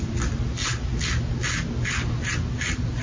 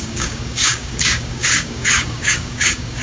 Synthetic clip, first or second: second